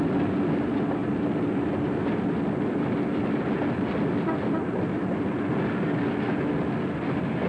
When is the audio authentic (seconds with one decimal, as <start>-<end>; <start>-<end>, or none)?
0.0-7.5